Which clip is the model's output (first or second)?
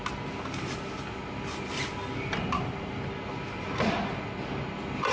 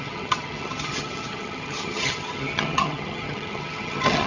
second